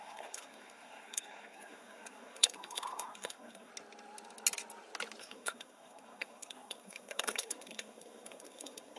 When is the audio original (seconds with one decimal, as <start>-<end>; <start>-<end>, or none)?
3.7-5.2